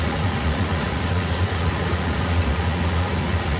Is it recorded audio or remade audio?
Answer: remade